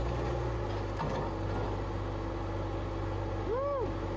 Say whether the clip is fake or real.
real